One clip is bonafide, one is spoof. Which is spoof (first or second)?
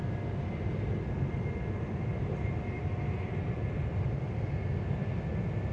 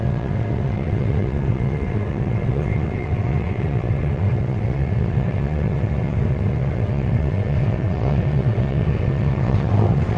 second